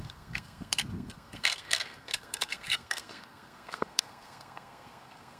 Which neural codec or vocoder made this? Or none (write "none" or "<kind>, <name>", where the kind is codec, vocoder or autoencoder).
codec, SNAC